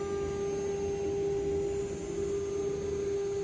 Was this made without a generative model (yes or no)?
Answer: yes